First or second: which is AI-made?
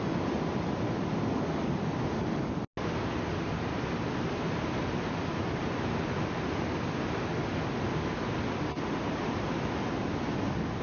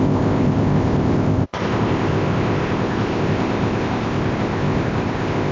second